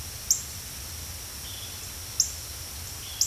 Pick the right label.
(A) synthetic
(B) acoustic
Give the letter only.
B